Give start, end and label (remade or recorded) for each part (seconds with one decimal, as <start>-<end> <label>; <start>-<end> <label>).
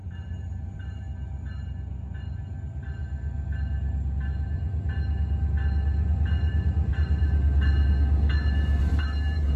0.0-1.0 remade; 1.0-8.8 recorded; 8.8-9.6 remade